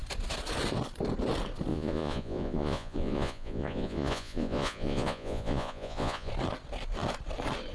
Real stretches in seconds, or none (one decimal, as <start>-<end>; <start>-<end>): 0.0-1.7; 6.3-7.7